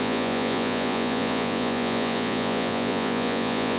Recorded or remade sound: remade